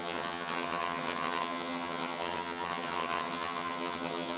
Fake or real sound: fake